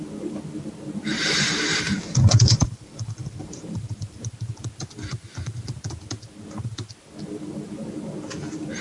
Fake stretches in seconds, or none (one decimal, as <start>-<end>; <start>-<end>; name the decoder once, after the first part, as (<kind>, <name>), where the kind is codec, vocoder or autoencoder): 1.1-4.2 (vocoder, BigVGAN v2)